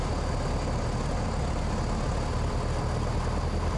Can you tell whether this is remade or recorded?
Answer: recorded